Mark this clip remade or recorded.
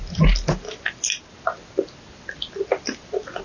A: recorded